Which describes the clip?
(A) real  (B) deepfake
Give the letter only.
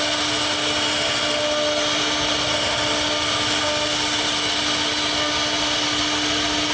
A